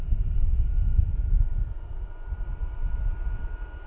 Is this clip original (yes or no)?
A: yes